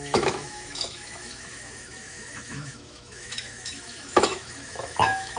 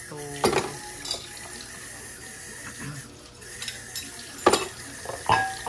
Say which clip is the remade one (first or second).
first